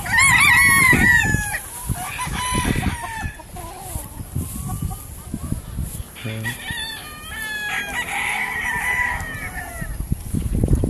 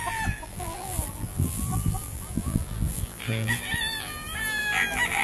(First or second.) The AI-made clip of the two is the second